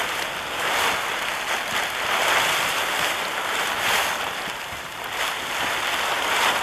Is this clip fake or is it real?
real